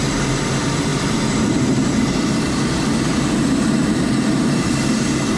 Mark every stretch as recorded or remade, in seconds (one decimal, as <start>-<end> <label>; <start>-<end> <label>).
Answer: 0.0-5.4 remade